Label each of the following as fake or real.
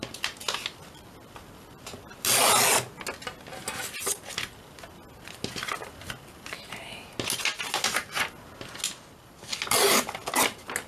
real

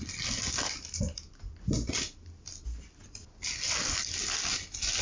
real